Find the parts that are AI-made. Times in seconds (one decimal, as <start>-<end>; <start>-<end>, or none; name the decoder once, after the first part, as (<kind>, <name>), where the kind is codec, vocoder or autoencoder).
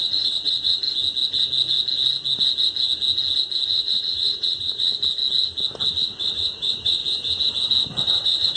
0.0-0.8 (vocoder, WaveNeXt); 3.7-4.9; 6.0-7.0; 8.0-8.6